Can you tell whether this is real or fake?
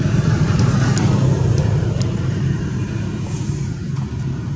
fake